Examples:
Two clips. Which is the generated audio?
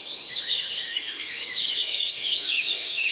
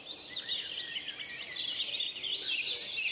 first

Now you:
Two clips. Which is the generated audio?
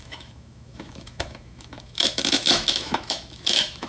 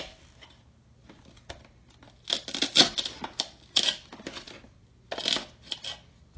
first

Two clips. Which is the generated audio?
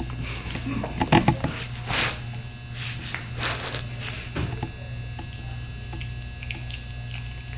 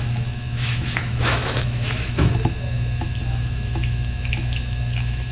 second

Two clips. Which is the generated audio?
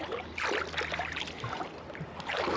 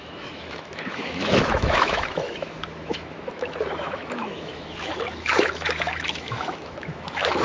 second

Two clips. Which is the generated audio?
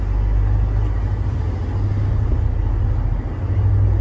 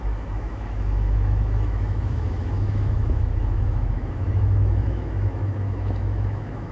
second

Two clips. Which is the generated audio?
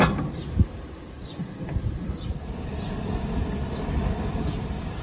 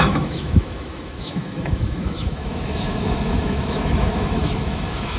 second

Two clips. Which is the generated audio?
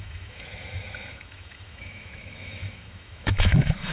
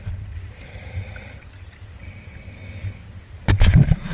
first